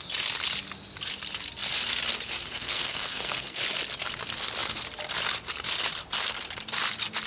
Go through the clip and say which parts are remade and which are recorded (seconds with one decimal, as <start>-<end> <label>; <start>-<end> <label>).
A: 0.0-2.5 recorded; 2.5-3.6 remade; 3.6-7.3 recorded